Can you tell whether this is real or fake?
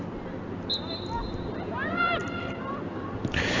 real